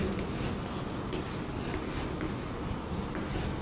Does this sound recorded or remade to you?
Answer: recorded